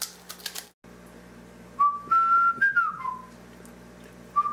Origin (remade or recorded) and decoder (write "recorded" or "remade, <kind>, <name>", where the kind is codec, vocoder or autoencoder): recorded